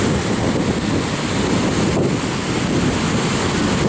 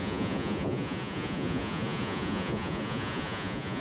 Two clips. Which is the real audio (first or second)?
first